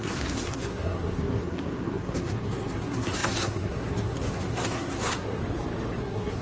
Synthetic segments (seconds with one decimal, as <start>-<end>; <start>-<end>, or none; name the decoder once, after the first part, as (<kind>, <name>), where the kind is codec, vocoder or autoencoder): 0.0-5.4 (codec, SNAC); 6.0-6.4